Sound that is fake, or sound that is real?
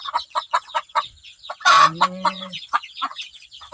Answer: fake